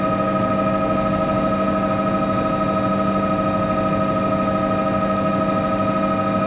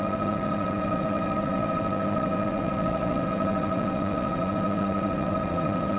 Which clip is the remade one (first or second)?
second